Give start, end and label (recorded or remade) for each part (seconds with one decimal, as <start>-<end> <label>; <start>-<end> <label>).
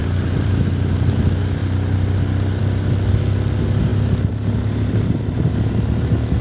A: 0.0-0.6 remade; 0.6-6.4 recorded